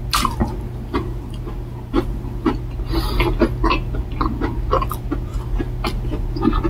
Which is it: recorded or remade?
recorded